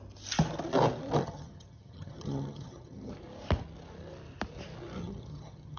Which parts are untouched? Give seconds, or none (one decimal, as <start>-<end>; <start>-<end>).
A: 0.0-1.2; 3.1-5.0